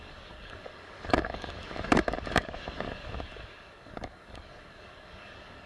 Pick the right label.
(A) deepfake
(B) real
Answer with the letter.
A